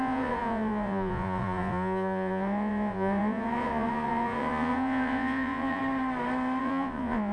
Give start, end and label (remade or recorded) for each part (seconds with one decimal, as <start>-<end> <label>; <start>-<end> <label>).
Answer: 0.0-5.8 remade; 5.8-6.6 recorded; 6.6-7.3 remade